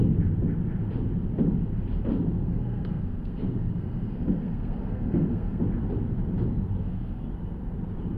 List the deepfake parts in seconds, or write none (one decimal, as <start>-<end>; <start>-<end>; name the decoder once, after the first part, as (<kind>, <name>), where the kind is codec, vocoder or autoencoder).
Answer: 2.4-5.6 (codec, SNAC); 6.8-7.3